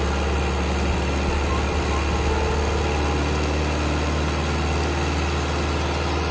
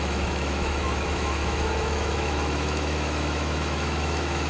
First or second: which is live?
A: first